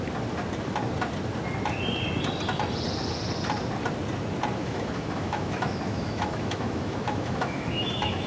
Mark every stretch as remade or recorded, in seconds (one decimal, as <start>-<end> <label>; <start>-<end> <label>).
0.0-4.6 recorded; 4.6-8.3 remade